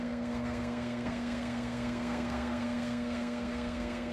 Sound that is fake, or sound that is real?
fake